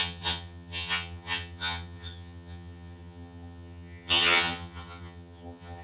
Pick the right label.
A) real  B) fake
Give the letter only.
B